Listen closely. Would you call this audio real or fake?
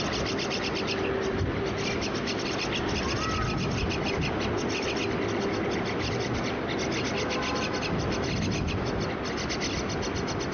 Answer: real